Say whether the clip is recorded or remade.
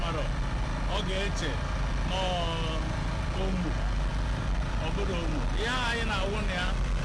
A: recorded